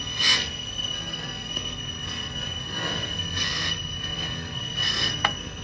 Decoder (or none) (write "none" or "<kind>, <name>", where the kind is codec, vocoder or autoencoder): codec, SNAC